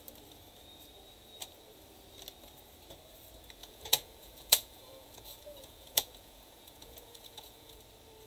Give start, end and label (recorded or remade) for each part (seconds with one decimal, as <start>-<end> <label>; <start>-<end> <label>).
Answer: 0.0-3.6 recorded; 3.6-7.8 remade; 7.8-8.3 recorded